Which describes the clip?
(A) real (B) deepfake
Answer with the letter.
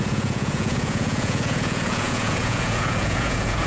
B